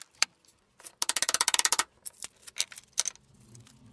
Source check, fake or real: real